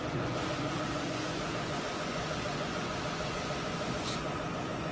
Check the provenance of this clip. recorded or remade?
remade